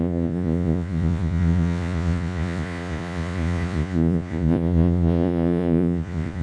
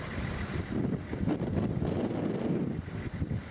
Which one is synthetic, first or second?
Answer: first